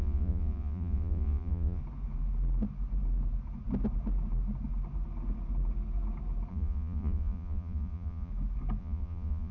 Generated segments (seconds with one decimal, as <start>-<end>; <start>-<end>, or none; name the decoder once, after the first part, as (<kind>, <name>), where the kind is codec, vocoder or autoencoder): 0.0-1.8 (vocoder, Vocos); 6.5-8.3; 8.8-9.5